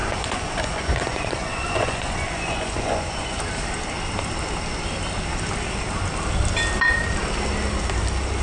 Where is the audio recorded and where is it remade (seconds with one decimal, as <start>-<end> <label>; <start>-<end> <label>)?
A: 0.0-3.4 remade; 3.4-8.4 recorded

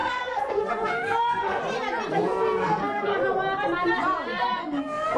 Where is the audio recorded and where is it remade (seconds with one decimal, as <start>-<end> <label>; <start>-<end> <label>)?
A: 0.0-1.6 remade; 1.6-2.1 recorded; 2.1-3.1 remade; 3.1-4.6 recorded; 4.6-5.2 remade

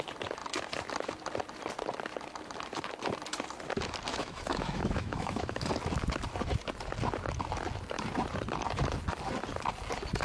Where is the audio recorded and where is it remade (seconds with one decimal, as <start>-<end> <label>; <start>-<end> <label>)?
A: 0.0-4.1 recorded; 4.1-5.7 remade; 5.7-10.2 recorded

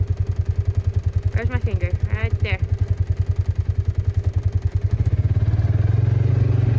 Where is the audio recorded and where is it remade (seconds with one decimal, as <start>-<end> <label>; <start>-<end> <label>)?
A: 0.0-6.8 recorded

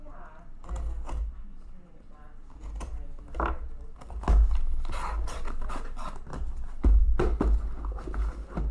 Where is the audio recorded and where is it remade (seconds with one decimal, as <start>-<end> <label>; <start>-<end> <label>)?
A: 0.0-8.7 recorded